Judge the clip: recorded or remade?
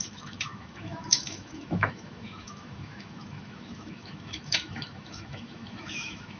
remade